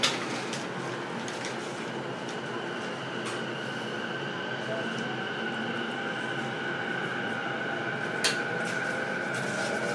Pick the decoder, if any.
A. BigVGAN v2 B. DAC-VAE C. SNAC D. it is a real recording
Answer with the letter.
D